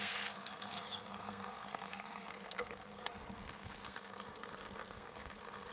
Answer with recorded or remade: remade